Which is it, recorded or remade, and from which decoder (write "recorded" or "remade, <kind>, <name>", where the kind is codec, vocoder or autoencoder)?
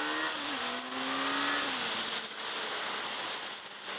recorded